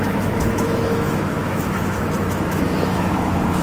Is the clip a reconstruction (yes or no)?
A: yes